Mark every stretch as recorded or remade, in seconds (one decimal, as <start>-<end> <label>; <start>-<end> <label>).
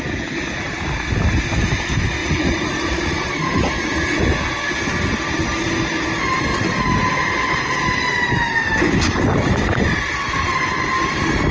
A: 0.0-2.2 recorded; 2.2-4.2 remade; 4.2-11.5 recorded